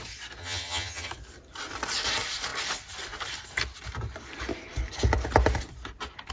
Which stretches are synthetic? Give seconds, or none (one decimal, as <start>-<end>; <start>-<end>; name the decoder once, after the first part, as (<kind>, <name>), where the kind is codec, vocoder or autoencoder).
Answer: 0.4-1.1 (vocoder, HiFi-GAN)

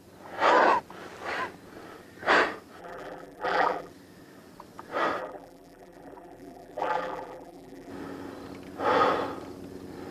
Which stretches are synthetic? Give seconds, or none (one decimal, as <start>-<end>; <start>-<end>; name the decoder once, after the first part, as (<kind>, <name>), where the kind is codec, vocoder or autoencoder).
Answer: 2.8-3.9 (vocoder, BigVGAN v2); 5.2-7.9

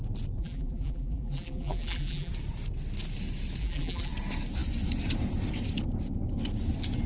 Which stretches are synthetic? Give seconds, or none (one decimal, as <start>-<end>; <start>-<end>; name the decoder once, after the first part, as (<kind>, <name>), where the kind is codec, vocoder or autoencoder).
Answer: 0.4-2.3 (vocoder, BigVGAN v2); 3.6-4.1

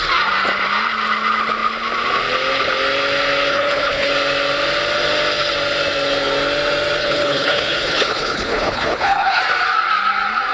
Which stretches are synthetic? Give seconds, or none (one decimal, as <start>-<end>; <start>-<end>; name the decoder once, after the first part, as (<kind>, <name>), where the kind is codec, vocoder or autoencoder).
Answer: 3.5-4.1 (codec, HILCodec); 7.0-9.4

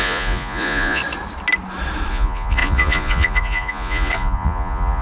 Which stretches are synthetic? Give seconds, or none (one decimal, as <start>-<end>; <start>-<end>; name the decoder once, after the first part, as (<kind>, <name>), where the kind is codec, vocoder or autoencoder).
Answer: 0.0-1.0 (vocoder, Vocos); 2.1-5.0

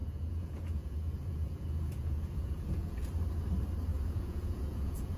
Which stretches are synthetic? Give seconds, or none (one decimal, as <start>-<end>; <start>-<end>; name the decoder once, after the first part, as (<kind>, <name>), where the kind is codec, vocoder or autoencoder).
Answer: 0.0-3.1 (vocoder, Vocos); 3.9-5.2

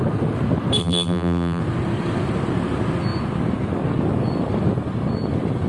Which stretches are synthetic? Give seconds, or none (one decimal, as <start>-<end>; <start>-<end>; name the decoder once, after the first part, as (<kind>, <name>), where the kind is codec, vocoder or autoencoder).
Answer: 0.8-1.6 (vocoder, BigVGAN v2)